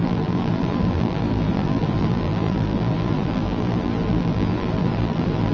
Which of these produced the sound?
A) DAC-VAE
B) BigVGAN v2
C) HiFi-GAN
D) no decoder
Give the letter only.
B